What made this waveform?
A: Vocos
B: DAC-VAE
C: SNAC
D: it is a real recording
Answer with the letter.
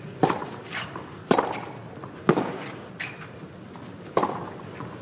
D